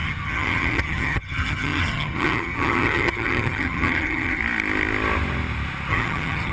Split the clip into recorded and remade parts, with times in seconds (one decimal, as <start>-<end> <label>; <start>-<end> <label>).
0.0-4.4 remade; 4.4-5.9 recorded; 5.9-6.5 remade